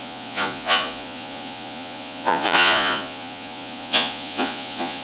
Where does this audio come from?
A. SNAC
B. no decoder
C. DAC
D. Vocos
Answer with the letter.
D